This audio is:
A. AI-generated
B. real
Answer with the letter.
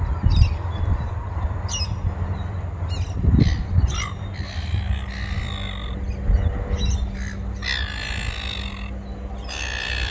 B